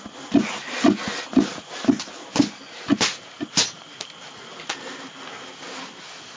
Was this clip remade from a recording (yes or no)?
no